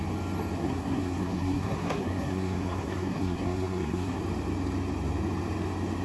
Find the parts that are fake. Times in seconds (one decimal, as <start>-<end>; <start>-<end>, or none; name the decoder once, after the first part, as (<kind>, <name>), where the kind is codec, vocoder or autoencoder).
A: 0.6-4.2 (codec, SNAC)